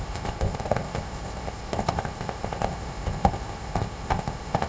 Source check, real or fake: fake